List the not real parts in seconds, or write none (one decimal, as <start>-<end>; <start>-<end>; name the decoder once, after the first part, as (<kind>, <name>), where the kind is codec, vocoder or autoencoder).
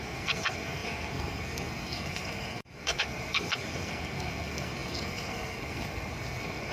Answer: 0.0-6.7 (codec, SNAC)